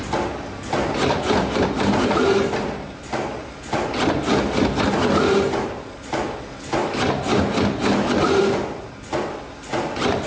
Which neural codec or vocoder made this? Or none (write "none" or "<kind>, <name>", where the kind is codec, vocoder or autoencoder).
none